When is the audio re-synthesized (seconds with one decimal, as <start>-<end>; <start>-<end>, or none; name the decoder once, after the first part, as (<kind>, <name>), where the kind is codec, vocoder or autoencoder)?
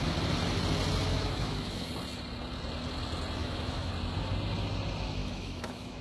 1.1-1.9 (autoencoder, DAC-VAE); 3.4-3.9; 5.2-6.0